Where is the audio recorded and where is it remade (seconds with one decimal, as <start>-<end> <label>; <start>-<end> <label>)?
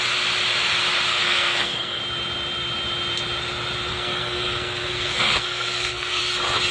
0.0-1.1 recorded; 1.1-2.0 remade; 2.0-3.9 recorded; 3.9-6.2 remade; 6.2-6.7 recorded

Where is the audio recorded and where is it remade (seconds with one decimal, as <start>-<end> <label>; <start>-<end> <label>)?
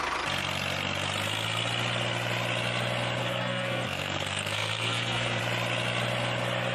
0.0-3.2 recorded; 3.2-5.4 remade; 5.4-6.7 recorded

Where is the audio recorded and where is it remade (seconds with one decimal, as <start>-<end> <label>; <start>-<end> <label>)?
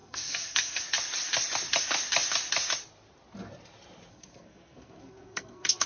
0.0-0.8 remade; 0.8-4.1 recorded; 4.1-5.9 remade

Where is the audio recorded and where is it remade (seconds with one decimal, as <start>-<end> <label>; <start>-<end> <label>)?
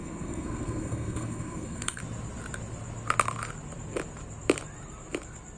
0.0-2.0 remade; 2.0-5.6 recorded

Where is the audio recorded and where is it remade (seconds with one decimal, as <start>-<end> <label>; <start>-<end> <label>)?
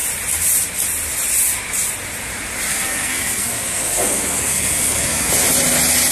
0.0-2.7 recorded; 2.7-5.3 remade; 5.3-6.1 recorded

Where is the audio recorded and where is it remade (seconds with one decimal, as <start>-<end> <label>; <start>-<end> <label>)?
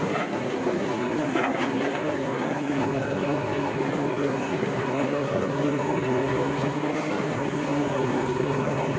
0.0-9.0 remade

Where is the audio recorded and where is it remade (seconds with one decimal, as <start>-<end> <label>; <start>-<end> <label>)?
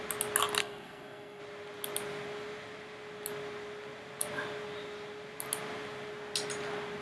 0.0-0.6 recorded; 0.6-1.4 remade; 1.4-7.0 recorded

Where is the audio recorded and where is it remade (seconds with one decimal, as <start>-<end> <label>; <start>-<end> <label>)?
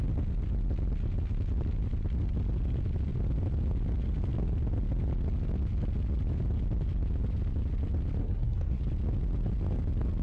0.0-8.2 recorded; 8.2-8.8 remade; 8.8-10.2 recorded